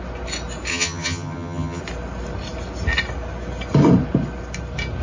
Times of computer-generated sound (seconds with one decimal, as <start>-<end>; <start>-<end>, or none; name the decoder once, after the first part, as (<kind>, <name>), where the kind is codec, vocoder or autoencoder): 0.7-1.8 (vocoder, HiFi-GAN)